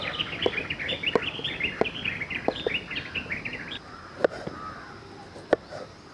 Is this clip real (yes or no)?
yes